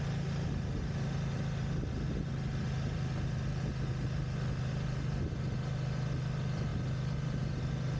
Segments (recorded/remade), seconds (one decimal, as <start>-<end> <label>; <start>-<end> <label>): 0.0-8.0 recorded